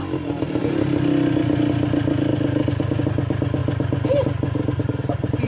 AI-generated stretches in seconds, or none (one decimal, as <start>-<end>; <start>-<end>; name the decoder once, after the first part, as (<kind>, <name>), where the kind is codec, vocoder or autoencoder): none

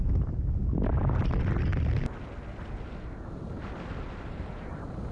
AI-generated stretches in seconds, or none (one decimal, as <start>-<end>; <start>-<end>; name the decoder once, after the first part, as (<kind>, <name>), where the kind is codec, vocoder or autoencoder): none

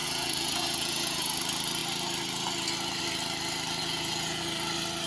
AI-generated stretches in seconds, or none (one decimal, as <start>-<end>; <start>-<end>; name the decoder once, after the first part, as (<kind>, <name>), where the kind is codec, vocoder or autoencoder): 0.0-1.4 (vocoder, Vocos); 3.8-4.4